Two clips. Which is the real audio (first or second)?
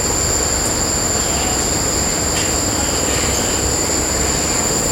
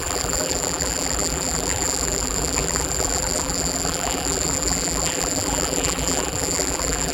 first